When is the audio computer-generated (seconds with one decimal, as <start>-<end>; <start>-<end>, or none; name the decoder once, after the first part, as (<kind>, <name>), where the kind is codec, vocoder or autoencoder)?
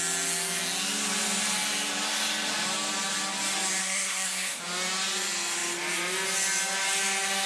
3.8-4.6 (codec, SNAC)